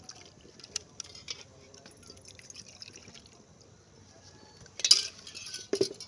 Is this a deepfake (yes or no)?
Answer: no